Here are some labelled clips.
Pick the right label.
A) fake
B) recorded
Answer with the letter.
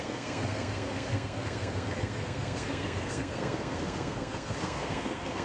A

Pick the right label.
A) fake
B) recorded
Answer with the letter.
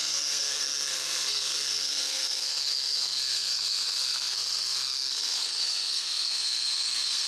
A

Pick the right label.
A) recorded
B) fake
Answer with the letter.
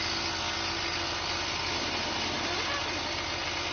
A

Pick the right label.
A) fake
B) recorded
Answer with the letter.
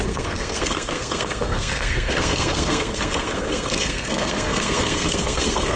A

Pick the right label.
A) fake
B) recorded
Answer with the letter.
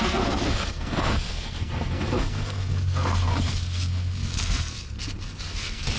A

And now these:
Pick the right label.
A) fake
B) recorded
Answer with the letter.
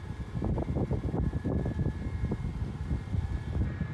B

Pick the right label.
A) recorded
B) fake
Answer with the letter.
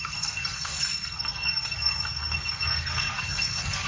B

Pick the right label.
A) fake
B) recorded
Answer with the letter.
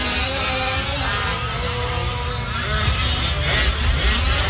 B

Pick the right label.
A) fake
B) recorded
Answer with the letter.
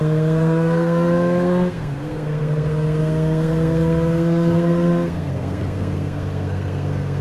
A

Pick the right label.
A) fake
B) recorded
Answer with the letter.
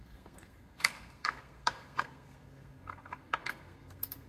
A